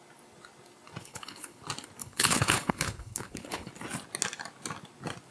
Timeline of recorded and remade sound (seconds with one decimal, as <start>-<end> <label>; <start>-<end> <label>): 0.0-1.0 recorded; 1.0-1.6 remade; 1.6-2.0 recorded; 2.0-3.7 remade; 3.7-5.3 recorded